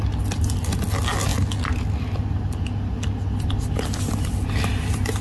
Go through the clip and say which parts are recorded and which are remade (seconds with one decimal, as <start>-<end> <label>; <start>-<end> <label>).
0.0-5.2 recorded